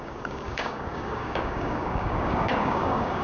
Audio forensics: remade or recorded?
remade